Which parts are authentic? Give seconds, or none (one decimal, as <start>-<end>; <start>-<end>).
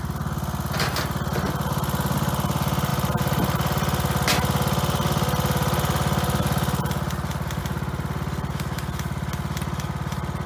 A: 0.0-10.5